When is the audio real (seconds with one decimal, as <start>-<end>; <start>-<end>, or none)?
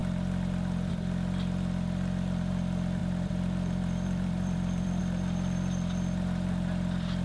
0.0-3.0; 5.0-7.2